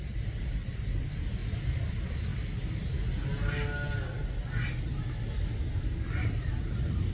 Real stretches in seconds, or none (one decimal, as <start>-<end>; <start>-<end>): 0.0-7.1